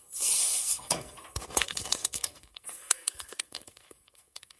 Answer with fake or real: fake